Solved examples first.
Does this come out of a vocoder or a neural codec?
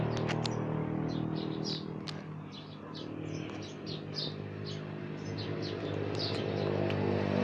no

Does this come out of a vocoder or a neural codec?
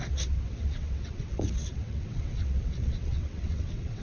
yes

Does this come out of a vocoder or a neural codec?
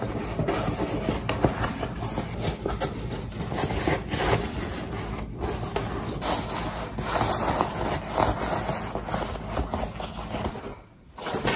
no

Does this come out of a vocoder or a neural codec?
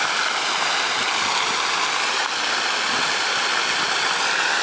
no